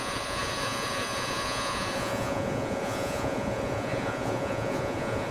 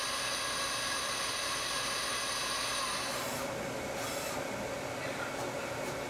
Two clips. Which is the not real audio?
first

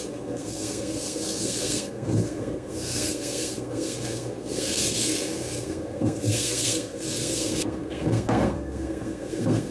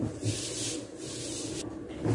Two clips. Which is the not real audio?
first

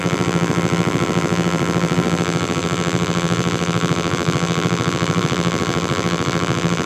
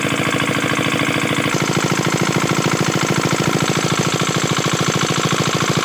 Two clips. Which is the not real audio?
first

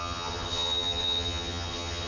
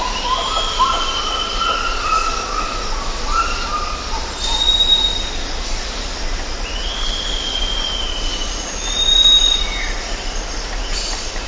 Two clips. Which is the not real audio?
first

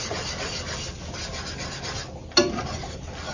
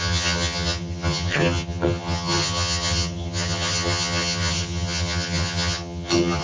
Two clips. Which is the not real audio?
second